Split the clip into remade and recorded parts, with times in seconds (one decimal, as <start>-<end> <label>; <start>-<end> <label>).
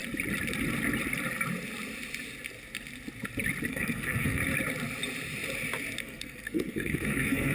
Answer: 0.0-3.7 recorded; 3.7-4.4 remade; 4.4-6.0 recorded; 6.0-7.5 remade